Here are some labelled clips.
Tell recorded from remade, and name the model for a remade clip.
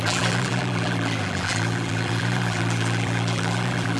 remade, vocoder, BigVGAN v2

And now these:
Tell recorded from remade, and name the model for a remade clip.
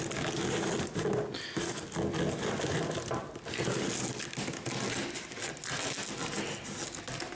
recorded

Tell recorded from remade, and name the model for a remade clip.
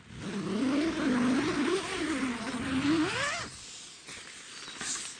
recorded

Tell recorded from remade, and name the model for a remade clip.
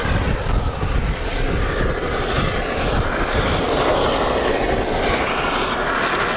recorded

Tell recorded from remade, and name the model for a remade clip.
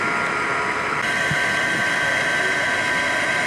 recorded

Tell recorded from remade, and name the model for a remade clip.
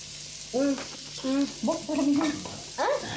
recorded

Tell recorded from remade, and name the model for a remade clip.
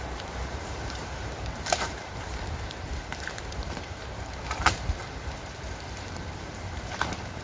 remade, vocoder, BigVGAN v2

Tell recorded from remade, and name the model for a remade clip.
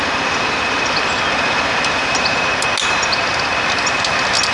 recorded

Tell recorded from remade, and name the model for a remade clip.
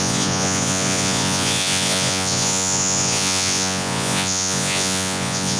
remade, vocoder, Vocos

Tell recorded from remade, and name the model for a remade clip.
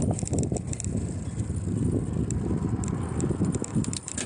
recorded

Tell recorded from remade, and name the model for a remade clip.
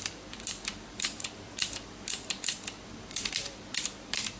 remade, vocoder, BigVGAN v2